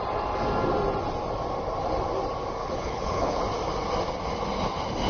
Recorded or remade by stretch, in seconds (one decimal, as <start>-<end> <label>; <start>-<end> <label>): 0.0-2.6 recorded; 2.6-3.4 remade; 3.4-5.1 recorded